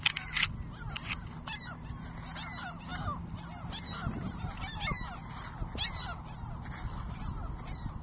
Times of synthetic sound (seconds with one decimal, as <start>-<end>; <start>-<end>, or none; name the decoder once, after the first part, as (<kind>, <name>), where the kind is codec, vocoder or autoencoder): none